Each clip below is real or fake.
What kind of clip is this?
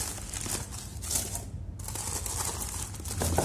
real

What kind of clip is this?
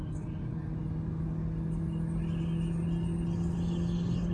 real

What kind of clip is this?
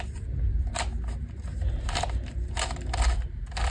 real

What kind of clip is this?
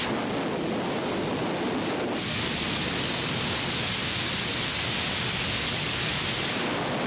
real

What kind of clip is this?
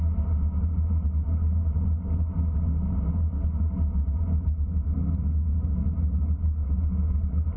real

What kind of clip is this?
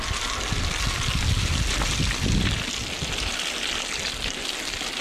real